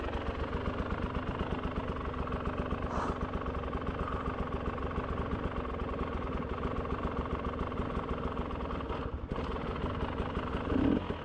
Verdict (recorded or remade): recorded